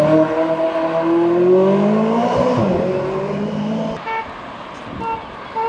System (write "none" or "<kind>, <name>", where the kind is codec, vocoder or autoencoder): none